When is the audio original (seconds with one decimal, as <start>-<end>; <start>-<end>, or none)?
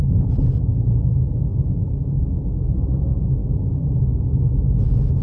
0.0-1.5; 2.2-5.2